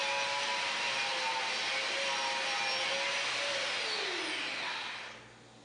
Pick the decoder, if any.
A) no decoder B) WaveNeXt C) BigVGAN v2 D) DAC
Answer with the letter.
A